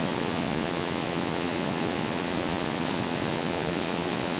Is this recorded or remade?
remade